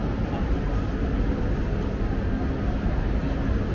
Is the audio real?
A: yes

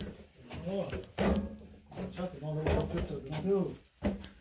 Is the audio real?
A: yes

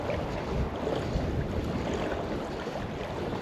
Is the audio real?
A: yes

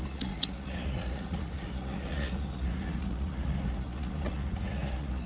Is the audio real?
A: no